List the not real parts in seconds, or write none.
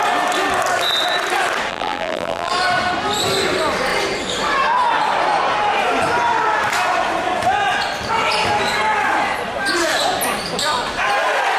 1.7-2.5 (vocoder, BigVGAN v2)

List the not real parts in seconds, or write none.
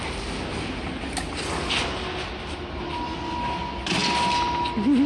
none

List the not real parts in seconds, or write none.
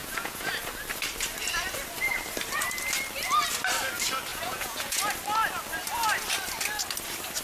0.0-0.5 (vocoder, Vocos); 4.3-5.0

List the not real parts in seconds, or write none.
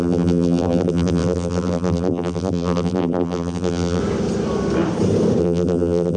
0.0-4.0 (vocoder, BigVGAN v2); 5.4-6.2